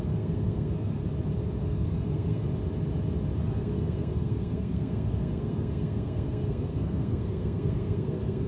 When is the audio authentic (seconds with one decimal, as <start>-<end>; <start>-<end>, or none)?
1.0-1.6; 2.5-3.4